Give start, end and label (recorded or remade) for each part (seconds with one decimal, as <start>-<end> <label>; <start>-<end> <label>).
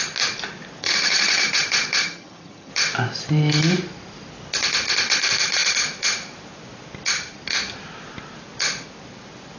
0.0-0.8 recorded; 0.8-1.5 remade; 1.5-2.0 recorded; 2.0-2.7 remade; 2.7-9.6 recorded